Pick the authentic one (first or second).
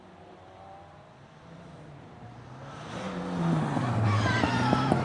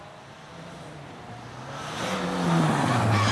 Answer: first